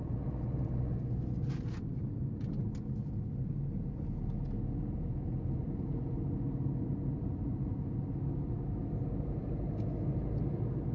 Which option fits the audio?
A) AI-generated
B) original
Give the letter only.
B